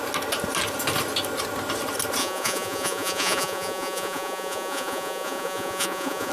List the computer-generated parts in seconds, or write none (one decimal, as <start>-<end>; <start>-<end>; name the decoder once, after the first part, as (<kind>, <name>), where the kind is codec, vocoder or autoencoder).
2.2-6.3 (vocoder, Vocos)

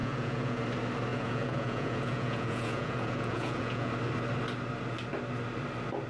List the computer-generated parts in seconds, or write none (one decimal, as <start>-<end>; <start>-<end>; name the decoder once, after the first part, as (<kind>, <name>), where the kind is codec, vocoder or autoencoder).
0.0-0.6 (vocoder, Vocos); 1.1-3.9

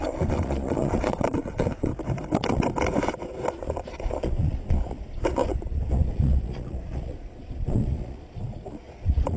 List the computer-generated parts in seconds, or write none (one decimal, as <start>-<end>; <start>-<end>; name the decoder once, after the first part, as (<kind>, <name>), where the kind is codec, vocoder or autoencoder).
0.0-1.9 (vocoder, Vocos); 3.5-9.4